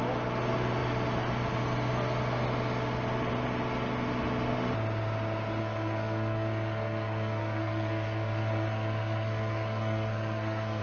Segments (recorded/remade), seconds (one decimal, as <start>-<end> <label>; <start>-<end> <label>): 0.0-5.6 recorded; 5.6-10.8 remade